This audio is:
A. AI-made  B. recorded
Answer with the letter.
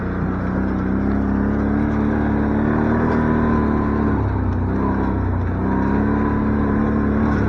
B